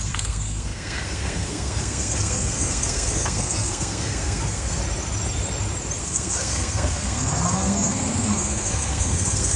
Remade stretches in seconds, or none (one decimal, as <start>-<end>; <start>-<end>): 0.0-4.8; 6.0-9.6